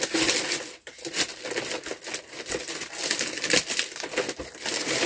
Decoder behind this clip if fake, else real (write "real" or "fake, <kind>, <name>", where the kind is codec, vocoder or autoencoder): real